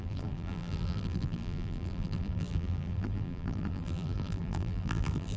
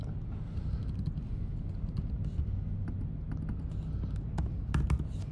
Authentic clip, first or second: second